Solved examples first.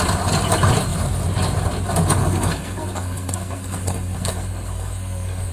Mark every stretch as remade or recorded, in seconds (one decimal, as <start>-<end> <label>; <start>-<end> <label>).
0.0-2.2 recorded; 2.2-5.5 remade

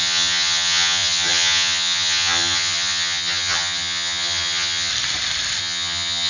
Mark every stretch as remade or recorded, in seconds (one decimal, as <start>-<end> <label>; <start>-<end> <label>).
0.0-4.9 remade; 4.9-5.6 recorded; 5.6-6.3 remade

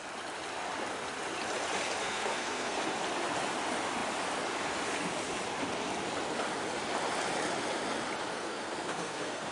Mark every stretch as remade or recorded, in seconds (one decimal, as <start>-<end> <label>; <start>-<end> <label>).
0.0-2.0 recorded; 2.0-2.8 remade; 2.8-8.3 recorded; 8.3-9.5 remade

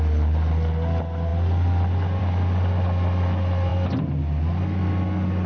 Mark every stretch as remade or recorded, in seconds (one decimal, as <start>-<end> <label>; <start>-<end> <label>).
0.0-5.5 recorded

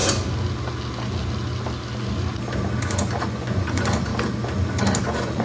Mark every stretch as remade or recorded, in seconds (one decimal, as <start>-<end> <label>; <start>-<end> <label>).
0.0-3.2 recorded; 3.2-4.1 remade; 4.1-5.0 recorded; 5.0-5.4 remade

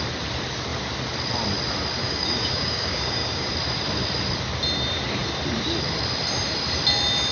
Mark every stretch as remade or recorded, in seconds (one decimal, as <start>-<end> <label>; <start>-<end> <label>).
0.0-2.0 recorded; 2.0-3.5 remade; 3.5-7.3 recorded